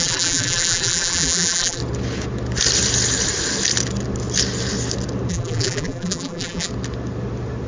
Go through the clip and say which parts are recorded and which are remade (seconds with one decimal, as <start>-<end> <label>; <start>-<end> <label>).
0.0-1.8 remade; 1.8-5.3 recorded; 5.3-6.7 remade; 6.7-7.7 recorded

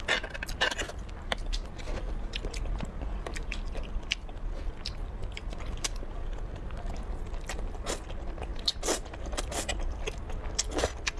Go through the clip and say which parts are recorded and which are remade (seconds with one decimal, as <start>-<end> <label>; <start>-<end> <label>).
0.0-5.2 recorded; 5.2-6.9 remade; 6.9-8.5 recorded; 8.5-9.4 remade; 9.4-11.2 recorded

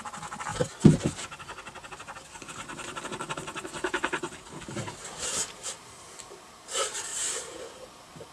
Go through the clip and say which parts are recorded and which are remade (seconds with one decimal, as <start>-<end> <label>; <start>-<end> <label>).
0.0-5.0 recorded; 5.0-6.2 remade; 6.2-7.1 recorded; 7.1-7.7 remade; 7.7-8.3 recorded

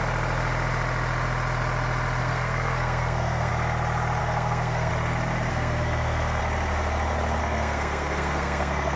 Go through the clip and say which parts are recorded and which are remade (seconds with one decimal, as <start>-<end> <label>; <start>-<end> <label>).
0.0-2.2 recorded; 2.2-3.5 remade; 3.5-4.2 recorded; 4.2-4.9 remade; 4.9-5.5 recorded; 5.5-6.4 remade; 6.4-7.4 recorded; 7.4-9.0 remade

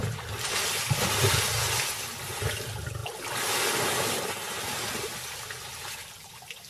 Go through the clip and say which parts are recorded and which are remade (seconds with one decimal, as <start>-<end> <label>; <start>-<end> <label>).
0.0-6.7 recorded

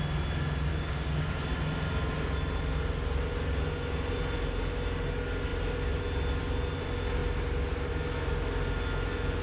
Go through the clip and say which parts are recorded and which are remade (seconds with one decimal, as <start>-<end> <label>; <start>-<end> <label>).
0.0-0.7 recorded; 0.7-1.3 remade; 1.3-9.4 recorded